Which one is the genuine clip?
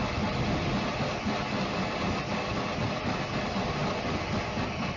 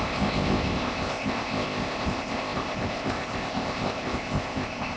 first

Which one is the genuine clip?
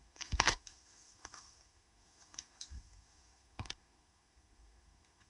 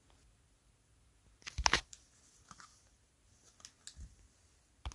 second